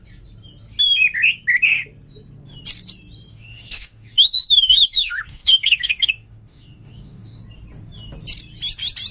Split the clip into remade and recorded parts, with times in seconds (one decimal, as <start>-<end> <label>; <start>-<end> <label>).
0.0-3.3 recorded; 3.3-7.4 remade; 7.4-9.1 recorded